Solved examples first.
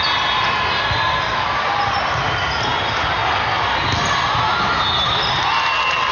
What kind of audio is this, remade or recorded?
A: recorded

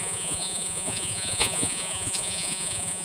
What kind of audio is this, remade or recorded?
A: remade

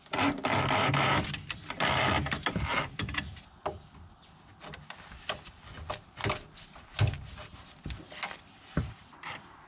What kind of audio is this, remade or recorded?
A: recorded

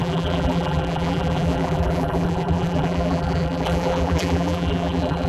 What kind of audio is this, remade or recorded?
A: remade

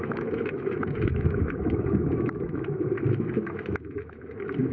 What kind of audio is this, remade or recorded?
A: remade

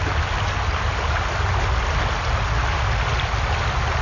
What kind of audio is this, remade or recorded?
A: recorded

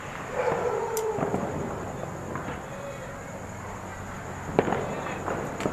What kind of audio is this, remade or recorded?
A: recorded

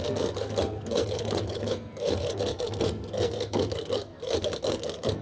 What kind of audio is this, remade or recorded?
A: remade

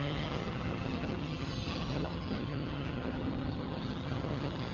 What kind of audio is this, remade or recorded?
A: remade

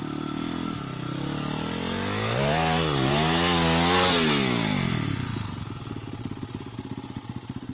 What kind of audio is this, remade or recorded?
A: recorded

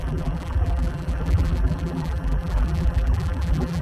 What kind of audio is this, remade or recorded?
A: remade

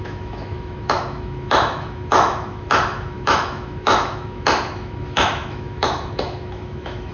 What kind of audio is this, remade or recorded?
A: remade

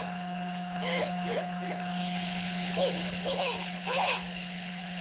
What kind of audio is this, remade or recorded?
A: remade